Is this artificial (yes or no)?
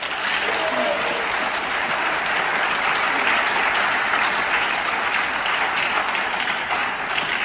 no